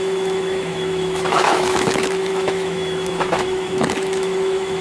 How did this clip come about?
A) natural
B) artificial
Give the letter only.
B